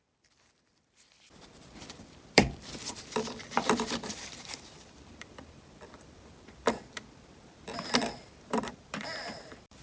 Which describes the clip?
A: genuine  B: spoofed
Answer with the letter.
B